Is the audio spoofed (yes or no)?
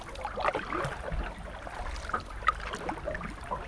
no